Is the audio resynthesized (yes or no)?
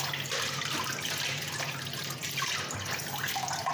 no